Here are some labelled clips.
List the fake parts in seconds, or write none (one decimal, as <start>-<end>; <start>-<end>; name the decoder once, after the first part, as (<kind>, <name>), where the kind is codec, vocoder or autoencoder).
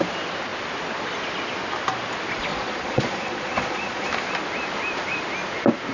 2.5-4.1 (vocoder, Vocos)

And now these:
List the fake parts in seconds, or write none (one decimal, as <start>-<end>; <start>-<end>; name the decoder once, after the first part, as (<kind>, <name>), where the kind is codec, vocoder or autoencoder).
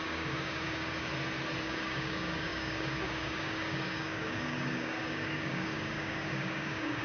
0.0-1.1 (codec, DAC); 1.6-7.0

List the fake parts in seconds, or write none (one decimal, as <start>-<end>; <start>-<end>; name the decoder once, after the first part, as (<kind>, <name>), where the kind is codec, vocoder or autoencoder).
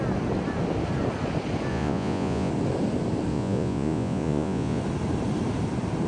1.7-2.5 (vocoder, Vocos); 3.3-4.8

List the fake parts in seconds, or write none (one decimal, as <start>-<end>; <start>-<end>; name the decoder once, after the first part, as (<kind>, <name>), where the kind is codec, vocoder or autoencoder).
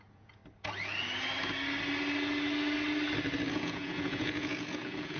0.0-0.4 (vocoder, Vocos); 3.5-5.2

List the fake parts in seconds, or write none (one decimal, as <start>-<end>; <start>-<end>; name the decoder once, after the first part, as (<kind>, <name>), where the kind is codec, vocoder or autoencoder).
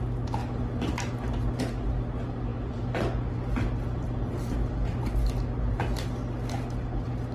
none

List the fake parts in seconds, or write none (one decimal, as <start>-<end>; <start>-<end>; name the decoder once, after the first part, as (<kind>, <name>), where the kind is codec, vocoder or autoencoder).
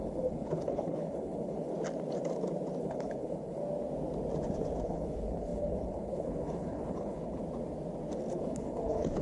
0.0-1.7 (codec, HILCodec); 2.8-3.6; 4.8-7.4; 8.3-9.2